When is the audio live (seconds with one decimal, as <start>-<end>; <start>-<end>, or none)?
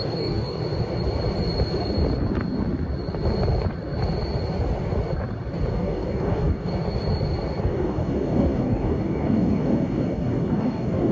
0.6-5.7; 6.7-7.6